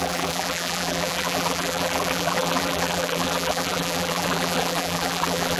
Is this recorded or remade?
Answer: remade